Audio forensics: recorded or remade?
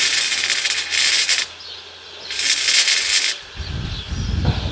recorded